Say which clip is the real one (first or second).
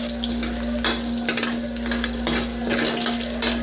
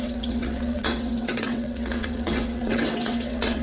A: first